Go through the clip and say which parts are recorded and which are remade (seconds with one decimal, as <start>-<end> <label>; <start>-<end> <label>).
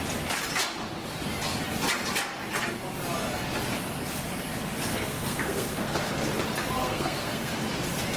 0.0-4.9 recorded; 4.9-6.1 remade; 6.1-6.8 recorded; 6.8-7.5 remade; 7.5-8.2 recorded